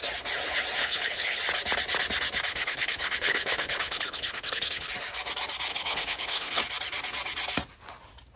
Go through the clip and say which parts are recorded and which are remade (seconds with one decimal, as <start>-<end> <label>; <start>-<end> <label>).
0.0-0.8 recorded; 0.8-1.4 remade; 1.4-2.5 recorded; 2.5-4.9 remade; 4.9-5.7 recorded; 5.7-6.6 remade; 6.6-8.4 recorded